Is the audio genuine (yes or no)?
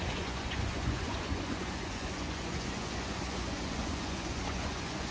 no